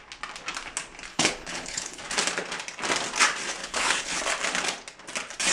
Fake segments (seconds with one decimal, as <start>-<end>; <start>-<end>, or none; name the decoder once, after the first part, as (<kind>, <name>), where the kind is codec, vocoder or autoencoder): 1.1-2.0 (codec, HILCodec); 3.6-4.2